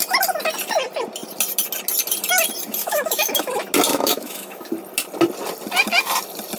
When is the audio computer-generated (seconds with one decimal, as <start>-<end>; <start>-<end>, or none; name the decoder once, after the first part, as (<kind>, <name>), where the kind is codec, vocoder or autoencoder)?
2.8-3.5 (autoencoder, DAC-VAE); 3.9-4.7